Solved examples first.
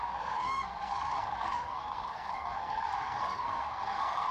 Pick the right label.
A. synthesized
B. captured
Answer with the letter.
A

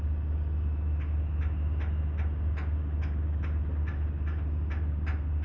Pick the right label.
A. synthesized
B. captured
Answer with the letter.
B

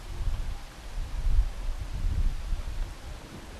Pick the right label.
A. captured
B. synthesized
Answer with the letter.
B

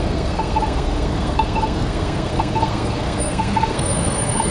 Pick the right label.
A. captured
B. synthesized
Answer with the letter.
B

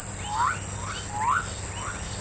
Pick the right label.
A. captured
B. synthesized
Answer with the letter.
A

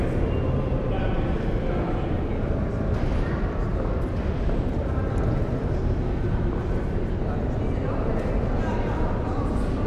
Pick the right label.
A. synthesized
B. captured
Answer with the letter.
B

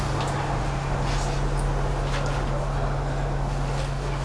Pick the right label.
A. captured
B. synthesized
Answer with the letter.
A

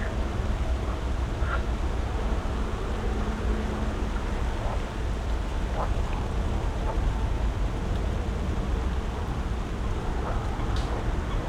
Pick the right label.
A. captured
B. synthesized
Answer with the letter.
A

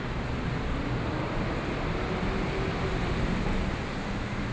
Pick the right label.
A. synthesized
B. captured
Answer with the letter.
B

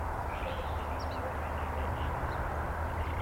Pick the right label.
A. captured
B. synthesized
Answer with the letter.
B